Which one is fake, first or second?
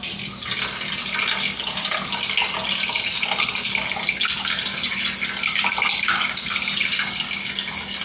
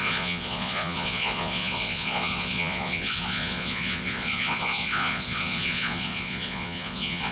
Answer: second